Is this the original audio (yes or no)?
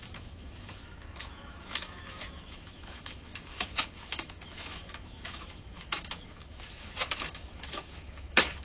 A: no